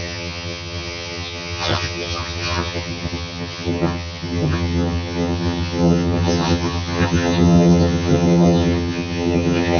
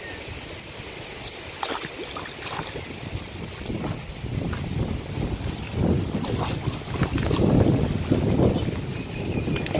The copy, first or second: first